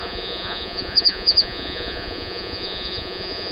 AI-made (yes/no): yes